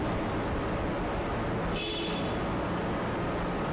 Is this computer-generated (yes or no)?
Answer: no